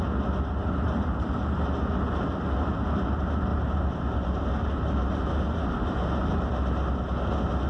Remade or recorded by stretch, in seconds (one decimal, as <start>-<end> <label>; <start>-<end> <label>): 0.0-0.6 recorded; 0.6-1.8 remade; 1.8-3.5 recorded; 3.5-6.5 remade; 6.5-7.7 recorded